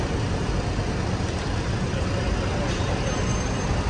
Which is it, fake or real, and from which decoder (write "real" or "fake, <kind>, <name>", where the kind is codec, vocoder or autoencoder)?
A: real